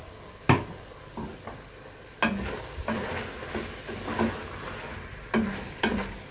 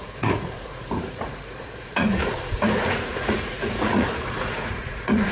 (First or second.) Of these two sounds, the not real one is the second